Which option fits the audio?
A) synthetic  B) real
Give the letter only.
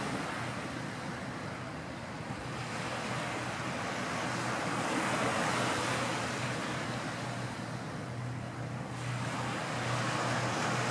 B